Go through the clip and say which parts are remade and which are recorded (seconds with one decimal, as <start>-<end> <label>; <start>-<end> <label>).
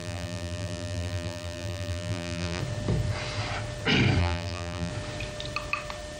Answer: 0.0-2.6 remade; 2.6-4.2 recorded; 4.2-4.9 remade; 4.9-6.2 recorded